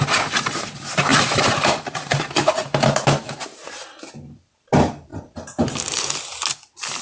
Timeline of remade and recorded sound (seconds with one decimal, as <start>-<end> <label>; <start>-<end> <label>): 0.0-1.1 recorded; 1.1-2.1 remade; 2.1-7.0 recorded